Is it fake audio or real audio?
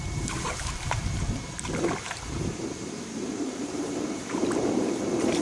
fake